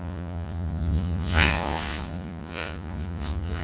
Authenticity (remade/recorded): remade